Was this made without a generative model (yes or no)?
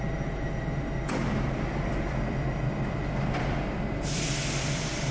no